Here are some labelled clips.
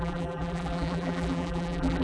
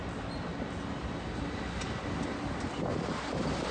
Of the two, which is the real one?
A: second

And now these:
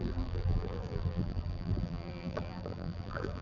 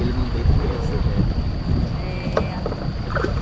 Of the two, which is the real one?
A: second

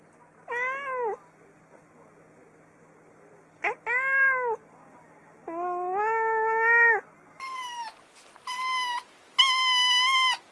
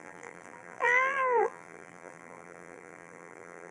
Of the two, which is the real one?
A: first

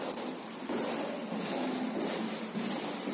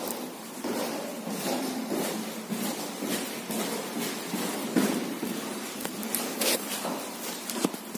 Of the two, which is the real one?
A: first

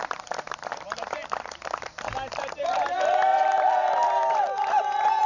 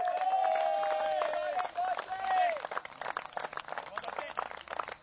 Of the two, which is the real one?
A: second